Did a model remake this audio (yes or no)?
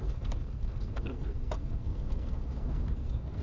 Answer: yes